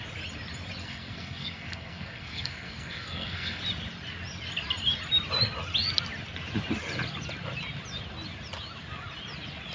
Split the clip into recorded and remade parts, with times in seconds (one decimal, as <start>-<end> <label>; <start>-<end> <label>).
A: 0.0-0.8 recorded; 0.8-3.6 remade; 3.6-9.7 recorded